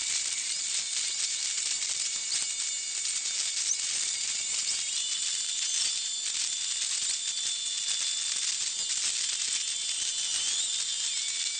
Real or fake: real